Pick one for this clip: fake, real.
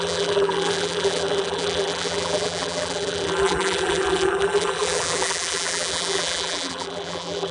fake